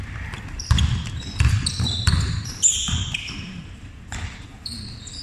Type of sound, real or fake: fake